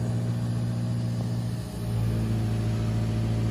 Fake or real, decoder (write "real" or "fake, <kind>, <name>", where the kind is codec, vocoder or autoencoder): real